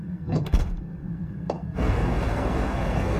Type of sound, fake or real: fake